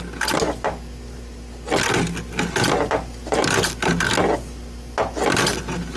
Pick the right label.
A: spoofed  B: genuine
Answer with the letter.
B